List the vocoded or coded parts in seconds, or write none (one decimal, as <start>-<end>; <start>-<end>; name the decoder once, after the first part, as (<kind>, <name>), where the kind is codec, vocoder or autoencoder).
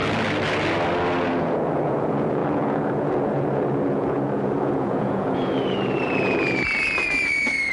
1.2-7.7 (vocoder, Vocos)